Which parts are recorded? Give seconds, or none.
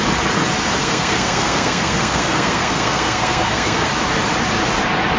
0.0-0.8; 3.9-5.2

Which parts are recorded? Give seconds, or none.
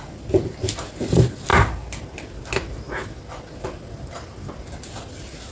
0.0-5.5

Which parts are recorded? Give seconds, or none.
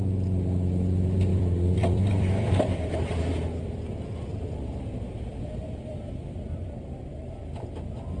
0.0-1.3; 4.8-5.3; 7.0-8.2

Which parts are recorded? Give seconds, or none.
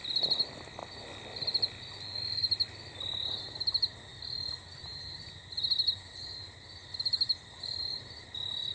0.0-0.8; 2.2-8.7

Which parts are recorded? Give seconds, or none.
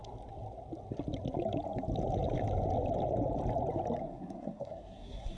0.0-4.0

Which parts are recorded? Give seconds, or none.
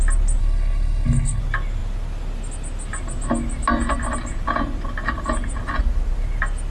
0.0-0.4; 1.4-6.7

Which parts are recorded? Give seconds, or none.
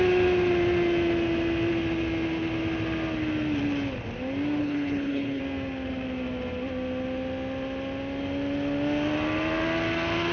0.0-4.6; 5.4-10.3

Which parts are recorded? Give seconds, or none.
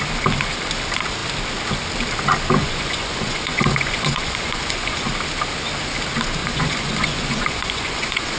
0.0-2.6; 5.1-6.4